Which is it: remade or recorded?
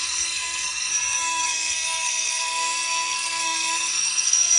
remade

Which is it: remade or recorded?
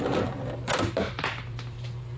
remade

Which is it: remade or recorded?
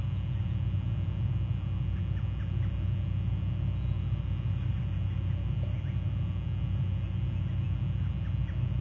recorded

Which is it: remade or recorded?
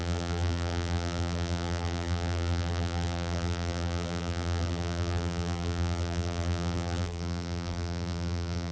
remade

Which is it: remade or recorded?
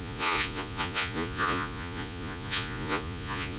remade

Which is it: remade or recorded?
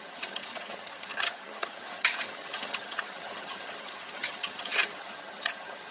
remade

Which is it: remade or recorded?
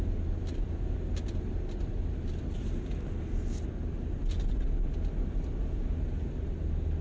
recorded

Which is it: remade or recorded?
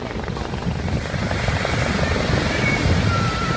recorded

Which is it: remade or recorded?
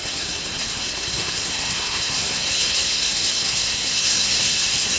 remade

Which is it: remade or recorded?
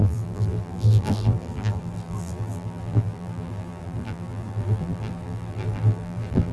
remade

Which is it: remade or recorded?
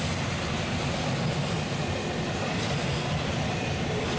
recorded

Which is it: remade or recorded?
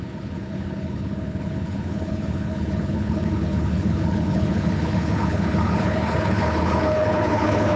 remade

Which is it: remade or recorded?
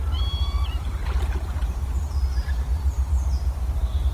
remade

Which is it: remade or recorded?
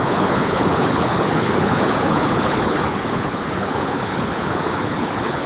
remade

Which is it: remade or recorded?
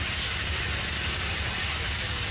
recorded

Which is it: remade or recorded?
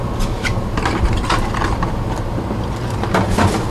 recorded